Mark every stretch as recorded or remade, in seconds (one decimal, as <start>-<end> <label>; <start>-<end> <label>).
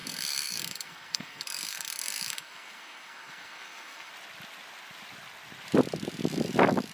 0.0-4.1 remade; 4.1-6.9 recorded